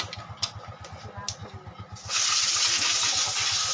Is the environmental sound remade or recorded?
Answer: recorded